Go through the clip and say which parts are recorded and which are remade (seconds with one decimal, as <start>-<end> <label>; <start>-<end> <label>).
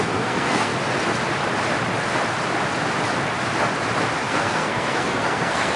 0.0-0.7 remade; 0.7-4.2 recorded; 4.2-5.8 remade